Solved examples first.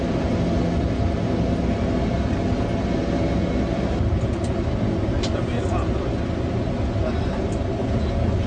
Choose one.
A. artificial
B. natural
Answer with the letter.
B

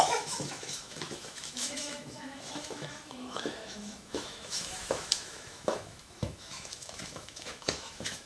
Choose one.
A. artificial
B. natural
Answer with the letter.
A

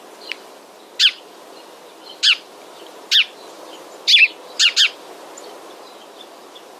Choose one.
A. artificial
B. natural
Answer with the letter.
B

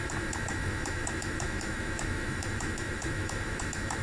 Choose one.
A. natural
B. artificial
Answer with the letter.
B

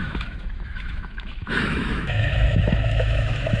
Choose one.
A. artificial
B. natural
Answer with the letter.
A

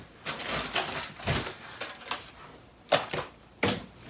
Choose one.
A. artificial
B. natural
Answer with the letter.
B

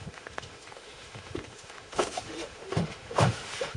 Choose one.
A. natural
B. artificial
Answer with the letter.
B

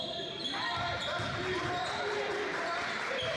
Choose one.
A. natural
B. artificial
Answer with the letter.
A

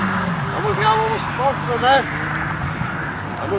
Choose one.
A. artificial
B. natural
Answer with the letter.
B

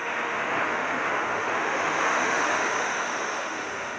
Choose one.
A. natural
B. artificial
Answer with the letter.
B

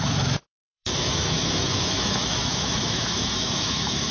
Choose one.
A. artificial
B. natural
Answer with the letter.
A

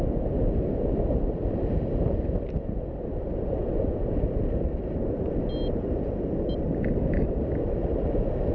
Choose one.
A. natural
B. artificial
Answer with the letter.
A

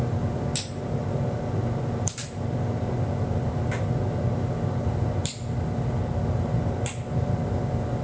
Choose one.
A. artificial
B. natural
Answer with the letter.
B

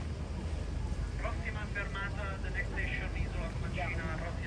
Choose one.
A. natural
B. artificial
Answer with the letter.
A